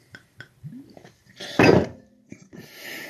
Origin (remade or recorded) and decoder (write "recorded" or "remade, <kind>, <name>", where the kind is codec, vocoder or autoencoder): remade, vocoder, BigVGAN v2